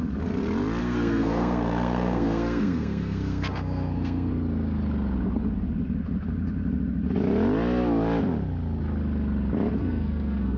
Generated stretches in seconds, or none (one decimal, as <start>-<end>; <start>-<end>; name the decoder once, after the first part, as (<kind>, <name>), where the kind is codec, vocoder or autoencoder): 0.8-4.3 (codec, SNAC); 9.8-10.6